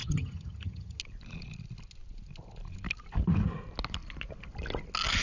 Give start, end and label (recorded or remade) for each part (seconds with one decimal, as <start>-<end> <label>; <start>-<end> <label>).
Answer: 0.0-1.0 remade; 1.0-5.2 recorded